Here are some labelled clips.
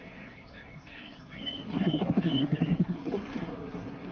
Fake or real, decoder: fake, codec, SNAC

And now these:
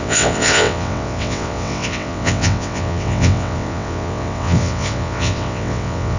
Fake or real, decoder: fake, vocoder, WaveNeXt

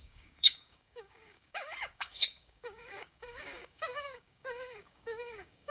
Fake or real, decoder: fake, codec, DAC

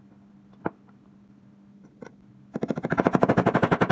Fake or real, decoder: real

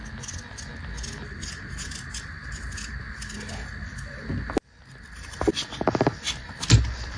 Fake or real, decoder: real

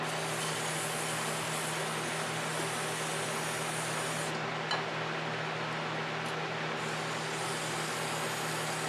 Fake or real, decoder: real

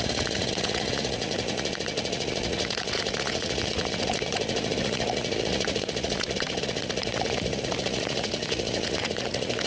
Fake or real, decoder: fake, vocoder, Vocos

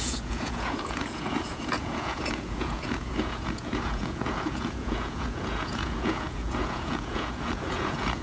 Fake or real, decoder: fake, vocoder, Vocos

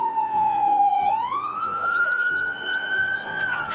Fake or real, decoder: fake, vocoder, Vocos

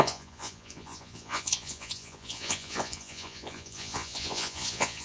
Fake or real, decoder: fake, vocoder, Vocos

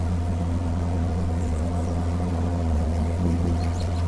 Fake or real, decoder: fake, vocoder, Vocos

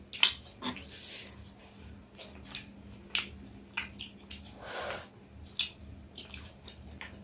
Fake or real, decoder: real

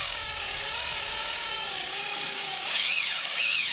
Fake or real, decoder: fake, codec, DAC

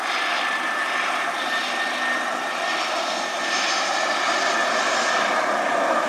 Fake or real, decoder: real